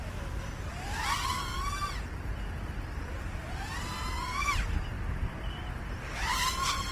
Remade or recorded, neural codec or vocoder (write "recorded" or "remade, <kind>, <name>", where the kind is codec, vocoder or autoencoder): recorded